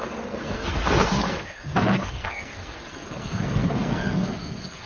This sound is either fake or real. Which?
fake